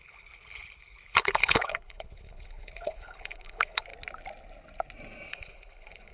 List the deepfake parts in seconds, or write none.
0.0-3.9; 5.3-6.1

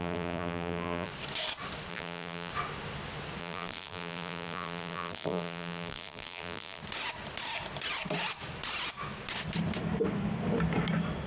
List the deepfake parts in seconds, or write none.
0.0-1.1; 1.9-2.5; 3.4-6.8

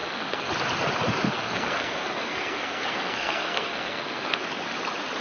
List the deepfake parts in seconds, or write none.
0.0-0.5; 1.3-4.4

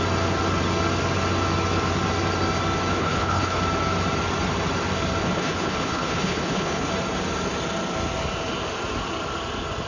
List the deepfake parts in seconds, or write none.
2.9-3.6; 5.2-6.9